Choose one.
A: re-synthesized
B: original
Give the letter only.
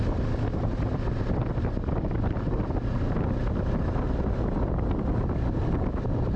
B